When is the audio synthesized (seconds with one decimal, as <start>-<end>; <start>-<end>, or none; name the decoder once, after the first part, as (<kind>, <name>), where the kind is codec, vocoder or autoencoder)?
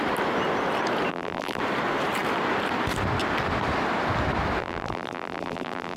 1.1-1.6 (vocoder, BigVGAN v2); 4.6-6.0